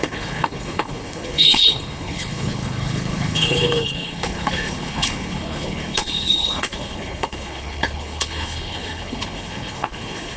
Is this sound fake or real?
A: fake